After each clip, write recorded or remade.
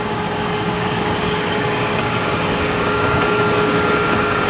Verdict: remade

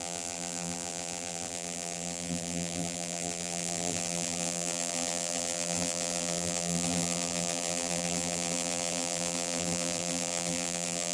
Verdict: remade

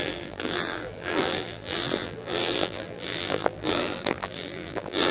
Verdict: remade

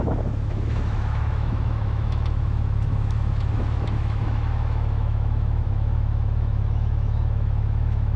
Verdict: remade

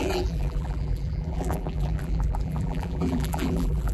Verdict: remade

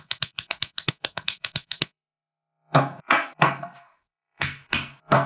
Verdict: remade